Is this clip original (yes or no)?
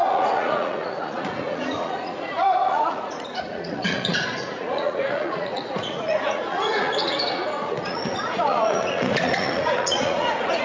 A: no